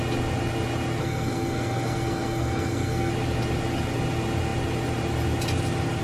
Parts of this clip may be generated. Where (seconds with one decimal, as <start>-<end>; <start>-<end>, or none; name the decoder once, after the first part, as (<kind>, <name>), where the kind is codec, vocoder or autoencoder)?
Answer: 1.0-3.1 (codec, SNAC)